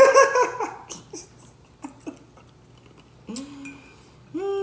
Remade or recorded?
recorded